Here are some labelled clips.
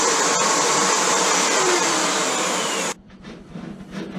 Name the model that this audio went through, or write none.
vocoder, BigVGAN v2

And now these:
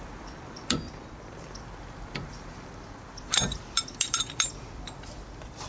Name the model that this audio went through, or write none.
vocoder, BigVGAN v2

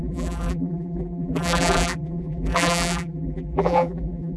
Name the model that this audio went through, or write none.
vocoder, BigVGAN v2